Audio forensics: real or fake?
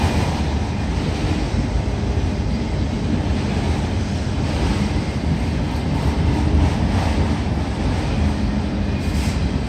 real